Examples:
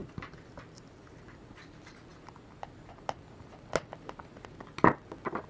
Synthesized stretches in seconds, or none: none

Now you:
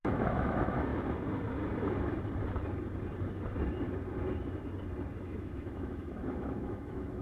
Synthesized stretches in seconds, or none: 0.0-0.9 (autoencoder, DAC-VAE); 5.2-7.2

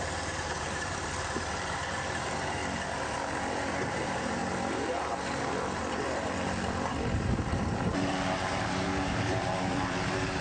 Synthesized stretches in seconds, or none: 0.0-2.6 (vocoder, BigVGAN v2); 3.8-4.4; 7.1-10.4

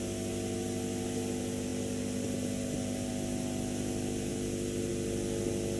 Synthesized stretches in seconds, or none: none

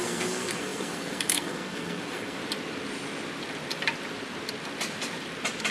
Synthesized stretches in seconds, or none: 0.0-2.4 (codec, SNAC)

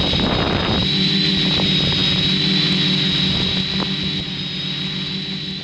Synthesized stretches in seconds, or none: none

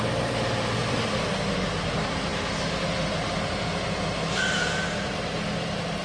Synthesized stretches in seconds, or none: none